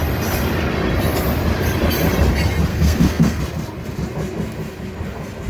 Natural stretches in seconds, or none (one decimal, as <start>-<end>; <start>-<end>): 0.0-2.7; 3.4-5.5